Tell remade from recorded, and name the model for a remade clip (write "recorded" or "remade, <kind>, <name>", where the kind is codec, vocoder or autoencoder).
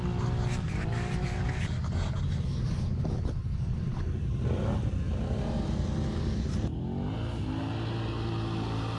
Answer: recorded